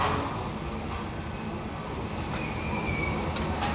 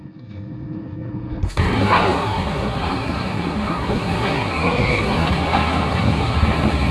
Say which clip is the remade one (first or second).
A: second